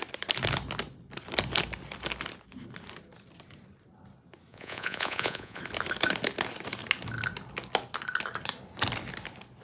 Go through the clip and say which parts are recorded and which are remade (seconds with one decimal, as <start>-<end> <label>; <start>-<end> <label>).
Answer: 0.0-4.5 recorded; 4.5-5.6 remade; 5.6-9.6 recorded